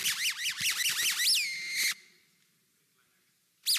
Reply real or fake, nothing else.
real